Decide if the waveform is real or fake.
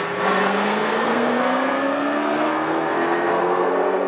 fake